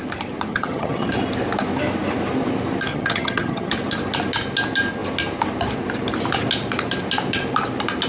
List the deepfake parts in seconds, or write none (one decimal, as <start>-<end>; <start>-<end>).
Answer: 0.5-1.1; 2.9-3.7